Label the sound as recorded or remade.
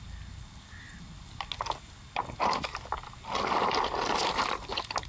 recorded